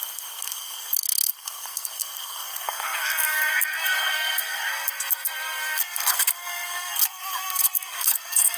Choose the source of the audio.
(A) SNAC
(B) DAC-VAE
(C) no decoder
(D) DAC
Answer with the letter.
A